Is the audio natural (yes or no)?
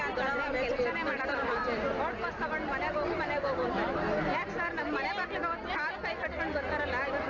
yes